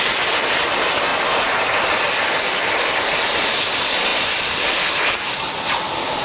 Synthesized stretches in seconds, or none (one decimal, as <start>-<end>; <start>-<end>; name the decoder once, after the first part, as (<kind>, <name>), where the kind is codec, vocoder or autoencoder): 0.0-1.1 (vocoder, BigVGAN v2); 3.5-6.2